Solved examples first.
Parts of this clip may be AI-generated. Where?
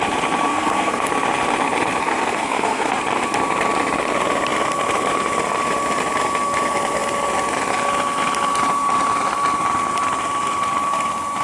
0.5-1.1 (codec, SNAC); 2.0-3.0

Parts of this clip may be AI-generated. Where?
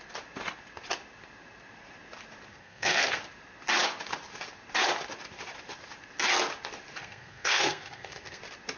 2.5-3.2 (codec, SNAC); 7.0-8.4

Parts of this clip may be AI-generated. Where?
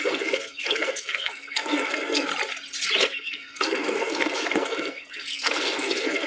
0.0-2.3 (codec, SNAC); 3.0-6.3